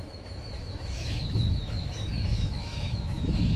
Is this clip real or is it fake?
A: fake